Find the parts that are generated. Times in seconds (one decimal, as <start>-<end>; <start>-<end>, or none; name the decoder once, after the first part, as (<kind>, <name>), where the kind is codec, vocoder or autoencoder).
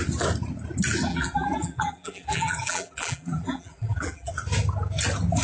1.1-4.3 (vocoder, BigVGAN v2)